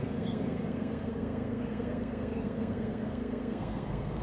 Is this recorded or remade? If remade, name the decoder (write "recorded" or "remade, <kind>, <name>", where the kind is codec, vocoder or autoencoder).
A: remade, codec, SNAC